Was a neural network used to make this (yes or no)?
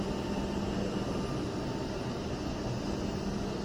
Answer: no